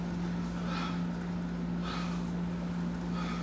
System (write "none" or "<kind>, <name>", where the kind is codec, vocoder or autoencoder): none